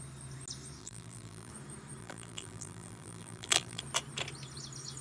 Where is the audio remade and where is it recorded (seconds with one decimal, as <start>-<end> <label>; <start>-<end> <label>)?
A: 0.0-0.8 recorded; 0.8-1.5 remade; 1.5-2.0 recorded; 2.0-3.8 remade; 3.8-5.0 recorded